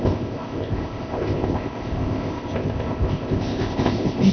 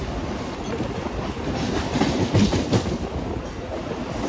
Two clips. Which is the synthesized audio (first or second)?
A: first